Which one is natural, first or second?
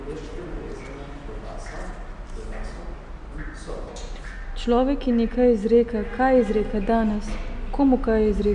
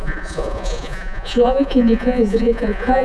first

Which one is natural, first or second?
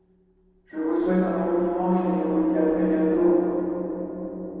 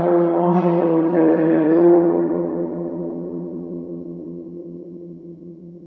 first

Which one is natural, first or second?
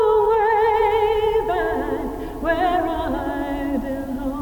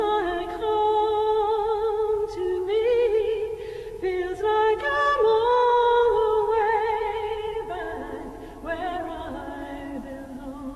first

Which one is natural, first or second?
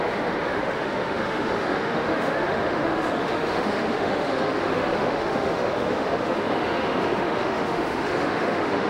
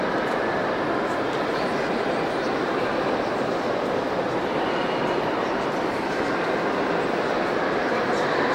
second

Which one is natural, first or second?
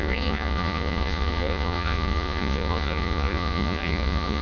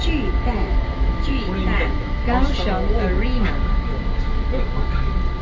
second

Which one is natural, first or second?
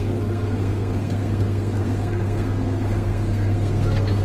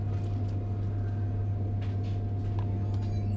second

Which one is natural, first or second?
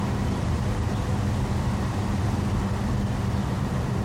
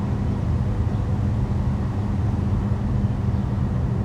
second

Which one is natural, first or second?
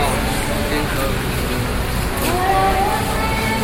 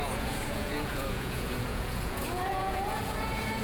first